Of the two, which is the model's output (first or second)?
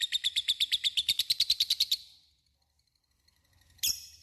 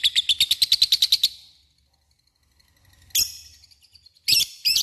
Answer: first